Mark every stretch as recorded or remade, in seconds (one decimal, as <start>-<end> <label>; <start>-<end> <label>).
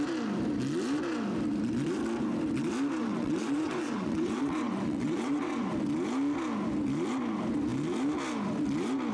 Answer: 0.0-3.0 recorded; 3.0-5.7 remade; 5.7-9.1 recorded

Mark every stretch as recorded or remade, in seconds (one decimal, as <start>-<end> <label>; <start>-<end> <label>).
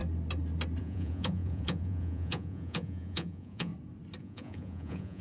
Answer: 0.0-0.8 recorded; 0.8-3.7 remade; 3.7-4.2 recorded; 4.2-5.2 remade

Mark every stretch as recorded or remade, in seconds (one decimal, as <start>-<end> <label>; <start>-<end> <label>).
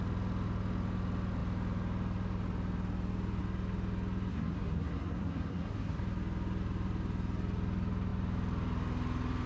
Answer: 0.0-4.3 recorded; 4.3-6.0 remade; 6.0-9.5 recorded